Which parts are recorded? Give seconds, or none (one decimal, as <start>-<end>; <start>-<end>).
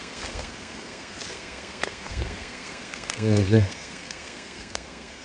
none